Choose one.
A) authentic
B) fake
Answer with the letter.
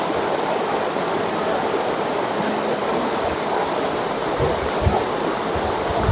A